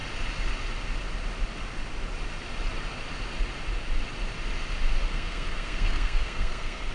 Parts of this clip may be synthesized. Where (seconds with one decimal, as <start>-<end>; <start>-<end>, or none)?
5.1-6.9